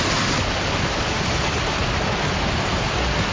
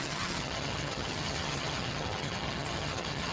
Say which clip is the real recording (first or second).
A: first